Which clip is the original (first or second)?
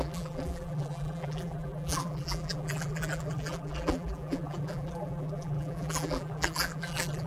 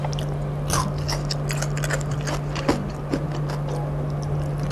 second